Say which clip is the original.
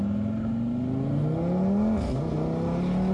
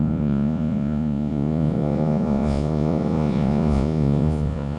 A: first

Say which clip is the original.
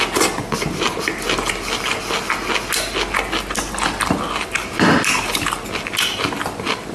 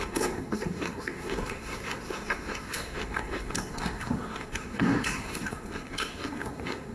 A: first